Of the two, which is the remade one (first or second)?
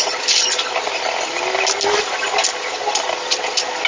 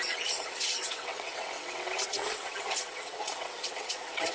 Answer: second